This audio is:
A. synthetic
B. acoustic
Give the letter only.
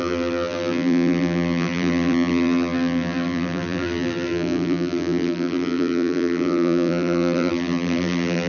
A